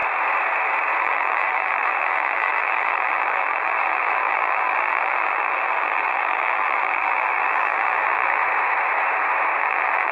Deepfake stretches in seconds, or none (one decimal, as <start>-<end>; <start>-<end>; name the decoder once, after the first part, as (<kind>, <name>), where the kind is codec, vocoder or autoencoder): 1.0-8.4 (vocoder, BigVGAN v2); 9.6-10.1